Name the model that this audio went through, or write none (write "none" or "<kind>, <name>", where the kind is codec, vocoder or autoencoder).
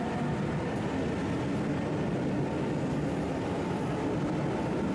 none